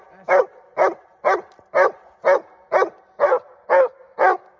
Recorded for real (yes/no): yes